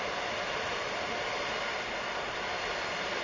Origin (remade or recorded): remade